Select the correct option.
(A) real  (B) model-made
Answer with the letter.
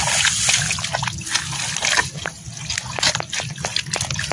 A